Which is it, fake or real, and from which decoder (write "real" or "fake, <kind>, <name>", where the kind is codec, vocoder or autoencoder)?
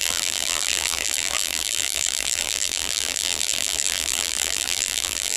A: fake, vocoder, BigVGAN v2